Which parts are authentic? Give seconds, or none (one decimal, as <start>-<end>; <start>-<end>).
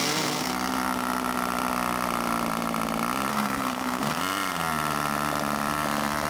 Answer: 0.5-3.3; 4.2-6.3